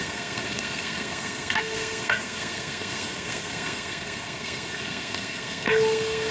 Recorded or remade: remade